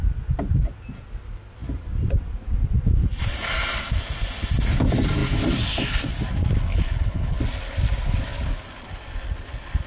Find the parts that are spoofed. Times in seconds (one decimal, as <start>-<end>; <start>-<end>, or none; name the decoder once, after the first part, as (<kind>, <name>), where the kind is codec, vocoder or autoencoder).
6.7-7.4 (codec, HILCodec)